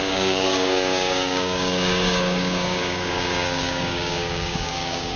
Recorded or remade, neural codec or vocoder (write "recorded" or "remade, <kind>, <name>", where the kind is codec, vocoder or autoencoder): remade, codec, DAC